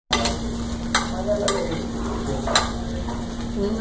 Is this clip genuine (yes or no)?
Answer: yes